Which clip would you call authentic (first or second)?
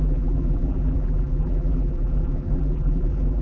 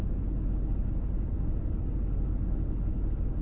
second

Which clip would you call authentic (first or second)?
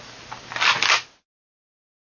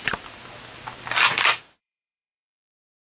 first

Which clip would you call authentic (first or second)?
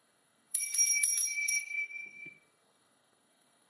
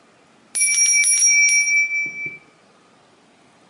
second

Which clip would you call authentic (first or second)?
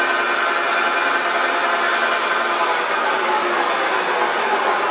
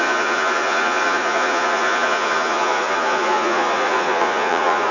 first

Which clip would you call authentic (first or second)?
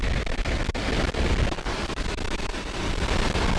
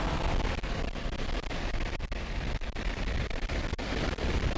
first